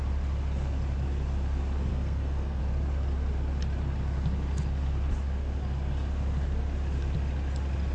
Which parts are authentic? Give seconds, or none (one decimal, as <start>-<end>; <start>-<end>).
0.0-1.9; 2.6-7.9